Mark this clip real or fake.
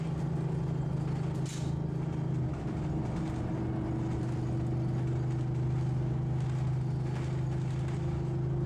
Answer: real